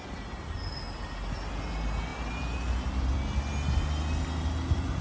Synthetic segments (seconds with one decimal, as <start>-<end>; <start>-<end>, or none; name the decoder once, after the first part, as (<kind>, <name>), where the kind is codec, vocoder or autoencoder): none